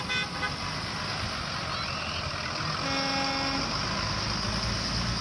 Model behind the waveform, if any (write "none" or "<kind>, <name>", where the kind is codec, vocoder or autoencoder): none